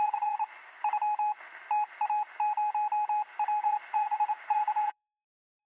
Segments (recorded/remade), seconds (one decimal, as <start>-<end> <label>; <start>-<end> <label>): 0.0-0.6 remade; 0.6-3.6 recorded; 3.6-5.7 remade